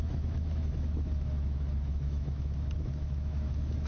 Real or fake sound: fake